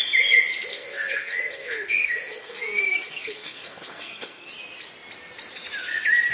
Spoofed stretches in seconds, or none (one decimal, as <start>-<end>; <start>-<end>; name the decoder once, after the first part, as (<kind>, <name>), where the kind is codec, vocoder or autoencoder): 0.7-4.5 (codec, SNAC)